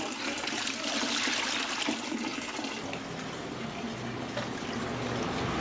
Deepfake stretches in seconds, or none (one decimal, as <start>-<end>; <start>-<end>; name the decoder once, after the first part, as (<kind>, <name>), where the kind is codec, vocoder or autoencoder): none